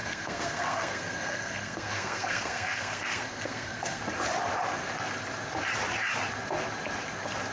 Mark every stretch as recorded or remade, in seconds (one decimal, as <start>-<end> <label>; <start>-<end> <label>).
0.0-4.0 remade; 4.0-7.5 recorded